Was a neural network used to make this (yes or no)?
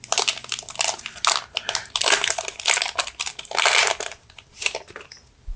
no